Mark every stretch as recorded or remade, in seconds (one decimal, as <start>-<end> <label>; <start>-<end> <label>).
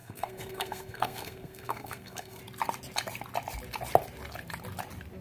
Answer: 0.0-2.4 remade; 2.4-5.2 recorded